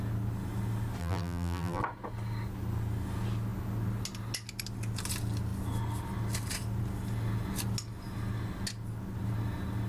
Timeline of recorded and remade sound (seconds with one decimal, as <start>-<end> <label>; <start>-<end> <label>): 0.0-1.0 recorded; 1.0-1.8 remade; 1.8-9.9 recorded